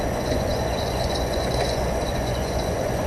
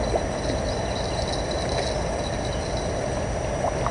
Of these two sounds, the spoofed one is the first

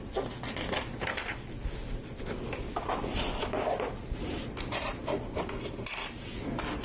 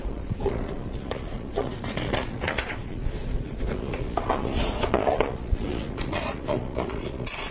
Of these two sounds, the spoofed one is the second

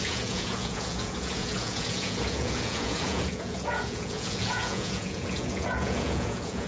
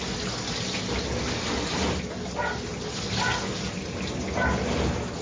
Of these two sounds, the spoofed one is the first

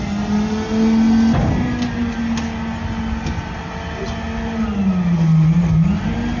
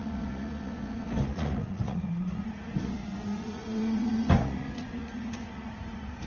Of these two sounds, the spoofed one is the second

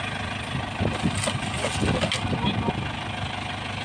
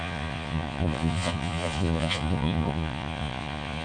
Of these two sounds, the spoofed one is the second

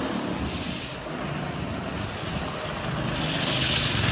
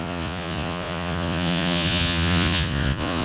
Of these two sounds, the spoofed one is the second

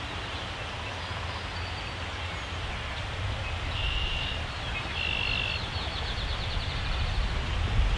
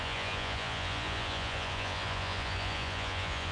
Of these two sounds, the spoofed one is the second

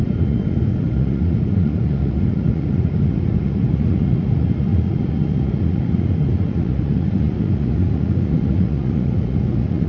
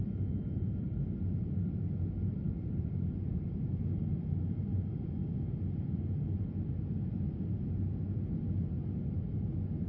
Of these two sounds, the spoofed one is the first